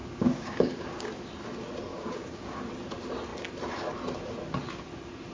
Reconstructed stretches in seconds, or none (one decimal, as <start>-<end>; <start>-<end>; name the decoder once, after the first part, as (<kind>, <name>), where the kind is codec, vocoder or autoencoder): 0.0-1.3 (codec, DAC); 1.9-2.7